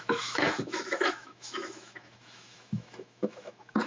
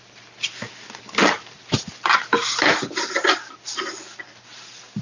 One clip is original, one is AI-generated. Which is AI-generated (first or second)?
first